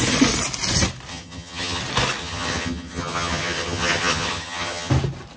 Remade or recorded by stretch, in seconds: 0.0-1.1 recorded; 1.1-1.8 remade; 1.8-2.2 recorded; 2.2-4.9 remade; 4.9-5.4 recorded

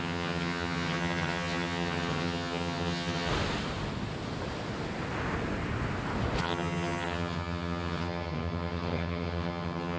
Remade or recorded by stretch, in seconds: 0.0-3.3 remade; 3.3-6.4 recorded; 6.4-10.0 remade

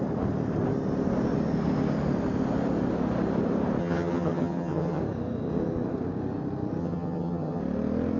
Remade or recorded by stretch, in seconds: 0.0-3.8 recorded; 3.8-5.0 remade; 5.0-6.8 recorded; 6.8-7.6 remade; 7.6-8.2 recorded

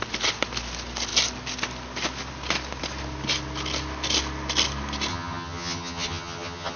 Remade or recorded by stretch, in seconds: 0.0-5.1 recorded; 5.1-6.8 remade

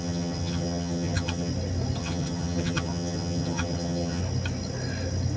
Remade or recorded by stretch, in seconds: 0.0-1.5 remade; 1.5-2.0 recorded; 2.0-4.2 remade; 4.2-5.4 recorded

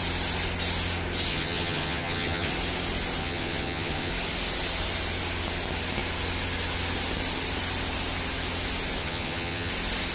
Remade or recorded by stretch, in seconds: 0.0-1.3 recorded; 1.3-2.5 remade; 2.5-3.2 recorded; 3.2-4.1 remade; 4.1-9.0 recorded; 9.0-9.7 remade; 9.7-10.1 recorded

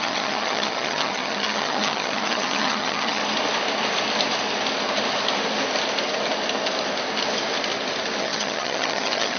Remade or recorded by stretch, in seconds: 0.0-3.2 remade; 3.2-8.2 recorded; 8.2-9.4 remade

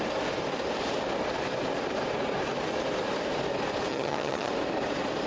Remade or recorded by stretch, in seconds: 0.0-3.9 recorded; 3.9-4.5 remade; 4.5-5.3 recorded